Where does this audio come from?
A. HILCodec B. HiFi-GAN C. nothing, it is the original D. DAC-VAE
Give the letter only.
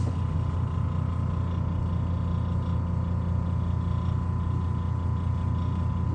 C